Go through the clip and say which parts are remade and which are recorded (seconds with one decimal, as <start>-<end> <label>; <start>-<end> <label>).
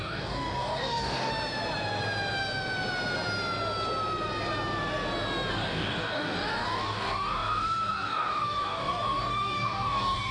0.0-1.3 remade; 1.3-5.5 recorded; 5.5-10.3 remade